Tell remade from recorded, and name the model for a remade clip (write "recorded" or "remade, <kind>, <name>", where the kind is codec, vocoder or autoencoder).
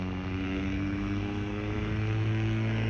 remade, codec, SNAC